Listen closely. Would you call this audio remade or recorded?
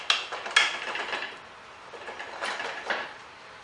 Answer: recorded